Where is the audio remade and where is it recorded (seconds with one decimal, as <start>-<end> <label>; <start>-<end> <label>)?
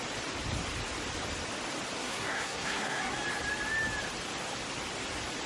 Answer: 0.0-2.0 recorded; 2.0-3.0 remade; 3.0-5.5 recorded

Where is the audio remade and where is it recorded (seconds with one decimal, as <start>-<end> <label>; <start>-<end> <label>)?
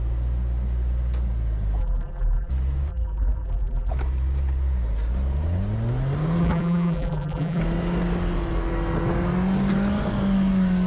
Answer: 0.0-1.8 recorded; 1.8-2.5 remade; 2.5-2.9 recorded; 2.9-3.9 remade; 3.9-6.4 recorded; 6.4-7.6 remade; 7.6-10.9 recorded